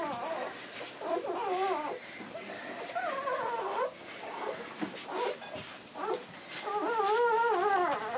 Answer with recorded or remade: recorded